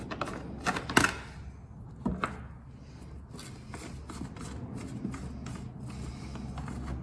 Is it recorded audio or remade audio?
recorded